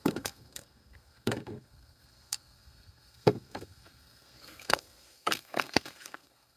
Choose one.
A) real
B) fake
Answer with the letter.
B